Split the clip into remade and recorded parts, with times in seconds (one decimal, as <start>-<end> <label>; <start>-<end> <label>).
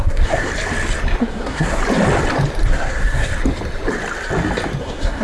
0.0-0.5 remade; 0.5-1.2 recorded; 1.2-1.8 remade; 1.8-2.7 recorded; 2.7-3.3 remade; 3.3-4.8 recorded; 4.8-5.2 remade